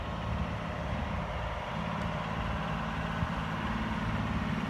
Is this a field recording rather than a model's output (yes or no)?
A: yes